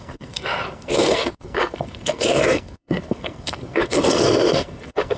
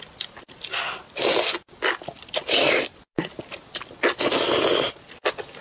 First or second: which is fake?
first